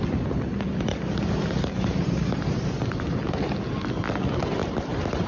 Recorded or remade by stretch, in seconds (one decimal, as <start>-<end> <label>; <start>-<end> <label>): 0.0-0.5 recorded; 0.5-3.2 remade; 3.2-4.6 recorded; 4.6-5.3 remade